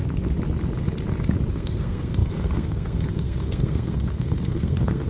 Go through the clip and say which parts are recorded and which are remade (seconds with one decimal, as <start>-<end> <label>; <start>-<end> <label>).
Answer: 0.0-1.5 recorded; 1.5-5.1 remade